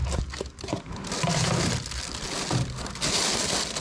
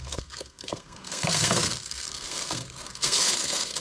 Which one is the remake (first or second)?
second